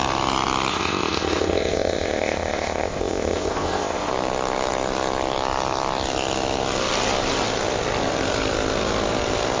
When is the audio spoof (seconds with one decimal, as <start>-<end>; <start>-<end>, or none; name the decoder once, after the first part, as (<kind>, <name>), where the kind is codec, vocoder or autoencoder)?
0.7-4.1 (codec, ZipCodec)